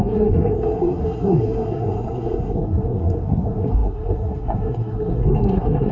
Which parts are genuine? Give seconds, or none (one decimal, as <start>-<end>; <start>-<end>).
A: none